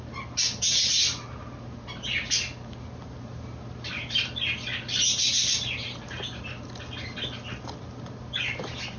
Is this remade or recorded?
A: recorded